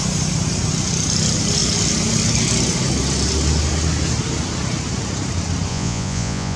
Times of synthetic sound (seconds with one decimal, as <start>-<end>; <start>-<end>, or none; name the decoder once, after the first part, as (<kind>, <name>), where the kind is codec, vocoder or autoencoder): 5.7-6.6 (vocoder, Vocos)